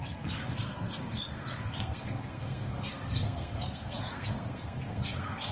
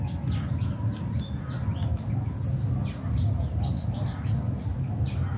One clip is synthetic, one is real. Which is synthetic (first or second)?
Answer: first